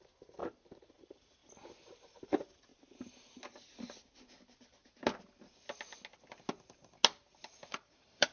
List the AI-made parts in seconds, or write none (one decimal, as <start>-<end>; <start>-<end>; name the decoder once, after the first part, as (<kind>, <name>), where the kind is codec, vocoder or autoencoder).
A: 0.0-0.4 (vocoder, BigVGAN v2); 0.9-1.4; 1.9-2.7; 7.3-8.3